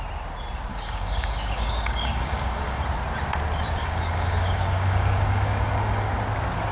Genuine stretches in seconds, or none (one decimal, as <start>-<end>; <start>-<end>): 0.0-0.7; 2.8-3.8; 6.1-6.7

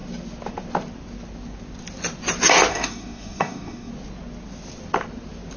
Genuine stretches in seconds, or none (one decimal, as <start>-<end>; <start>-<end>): 0.0-2.7; 3.9-5.6

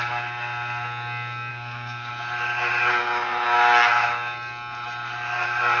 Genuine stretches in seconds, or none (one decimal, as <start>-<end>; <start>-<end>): 0.0-1.5; 2.1-5.8